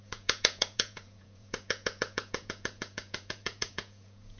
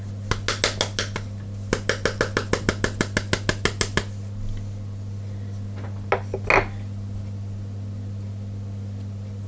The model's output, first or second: first